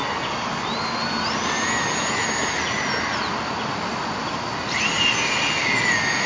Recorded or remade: recorded